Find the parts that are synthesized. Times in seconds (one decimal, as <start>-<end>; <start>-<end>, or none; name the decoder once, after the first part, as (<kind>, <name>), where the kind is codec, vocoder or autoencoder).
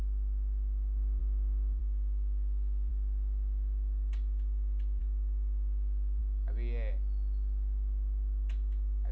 none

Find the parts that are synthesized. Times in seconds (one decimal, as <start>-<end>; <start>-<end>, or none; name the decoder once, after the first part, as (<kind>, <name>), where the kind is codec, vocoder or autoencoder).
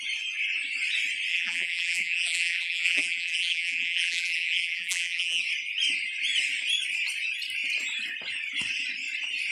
1.3-5.4 (vocoder, BigVGAN v2)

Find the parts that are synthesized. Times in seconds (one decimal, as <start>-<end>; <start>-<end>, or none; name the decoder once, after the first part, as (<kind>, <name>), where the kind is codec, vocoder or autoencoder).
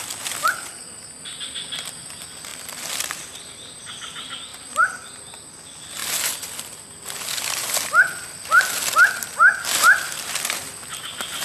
2.5-3.8 (vocoder, BigVGAN v2); 4.5-5.2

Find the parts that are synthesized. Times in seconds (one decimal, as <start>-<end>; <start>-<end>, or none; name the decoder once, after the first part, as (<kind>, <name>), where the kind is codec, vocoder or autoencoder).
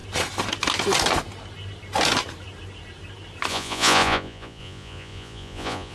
3.5-5.9 (vocoder, Vocos)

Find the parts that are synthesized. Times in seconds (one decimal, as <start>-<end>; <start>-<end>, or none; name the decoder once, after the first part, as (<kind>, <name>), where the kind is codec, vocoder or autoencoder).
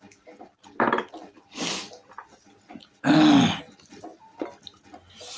none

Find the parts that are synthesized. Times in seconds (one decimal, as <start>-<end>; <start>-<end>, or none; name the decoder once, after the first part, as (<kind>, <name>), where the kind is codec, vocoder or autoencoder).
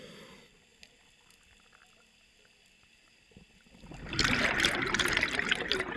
none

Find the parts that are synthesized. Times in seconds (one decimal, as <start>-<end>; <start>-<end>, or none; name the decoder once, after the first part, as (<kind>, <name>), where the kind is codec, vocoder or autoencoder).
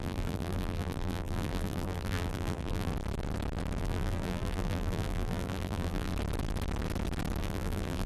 0.0-2.9 (vocoder, BigVGAN v2); 3.8-6.1; 7.4-8.1